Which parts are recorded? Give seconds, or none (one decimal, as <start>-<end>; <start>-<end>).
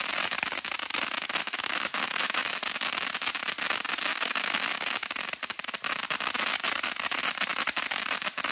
0.0-1.4; 2.5-4.1; 5.1-8.5